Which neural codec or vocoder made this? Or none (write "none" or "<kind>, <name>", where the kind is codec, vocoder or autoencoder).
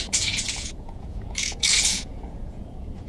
vocoder, Vocos